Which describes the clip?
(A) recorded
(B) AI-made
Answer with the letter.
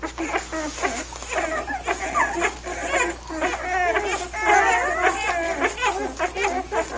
A